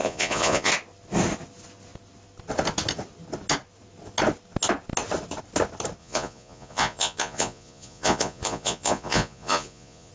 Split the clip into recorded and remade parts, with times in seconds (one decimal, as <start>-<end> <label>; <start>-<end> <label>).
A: 0.0-0.7 remade; 0.7-6.0 recorded; 6.0-10.1 remade